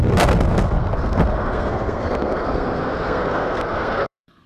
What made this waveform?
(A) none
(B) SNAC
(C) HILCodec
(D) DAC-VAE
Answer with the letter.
B